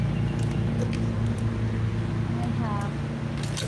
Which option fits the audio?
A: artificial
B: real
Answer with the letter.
B